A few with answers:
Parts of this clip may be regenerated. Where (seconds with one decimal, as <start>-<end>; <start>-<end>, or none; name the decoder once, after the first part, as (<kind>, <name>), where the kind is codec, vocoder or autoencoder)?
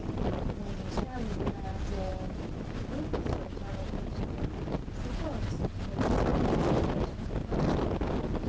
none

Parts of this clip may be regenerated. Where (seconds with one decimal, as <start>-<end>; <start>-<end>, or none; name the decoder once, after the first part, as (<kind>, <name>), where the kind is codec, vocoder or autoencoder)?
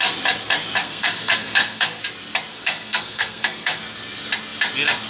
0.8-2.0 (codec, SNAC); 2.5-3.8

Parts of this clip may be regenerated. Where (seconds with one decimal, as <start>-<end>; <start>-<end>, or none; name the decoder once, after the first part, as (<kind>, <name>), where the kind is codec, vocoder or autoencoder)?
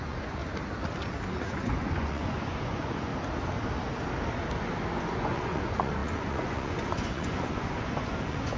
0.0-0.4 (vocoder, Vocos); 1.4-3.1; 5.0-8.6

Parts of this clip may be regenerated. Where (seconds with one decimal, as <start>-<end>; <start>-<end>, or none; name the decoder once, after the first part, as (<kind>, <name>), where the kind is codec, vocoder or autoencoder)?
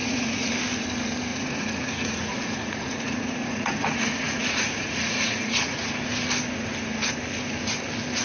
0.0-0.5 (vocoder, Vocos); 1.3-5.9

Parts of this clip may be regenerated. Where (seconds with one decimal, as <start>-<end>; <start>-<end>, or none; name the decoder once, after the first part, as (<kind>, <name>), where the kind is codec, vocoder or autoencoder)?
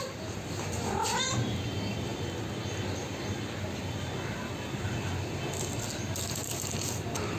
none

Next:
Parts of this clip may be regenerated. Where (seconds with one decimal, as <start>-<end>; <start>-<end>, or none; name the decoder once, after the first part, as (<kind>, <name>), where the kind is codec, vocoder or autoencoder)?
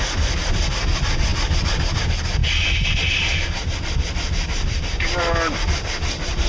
none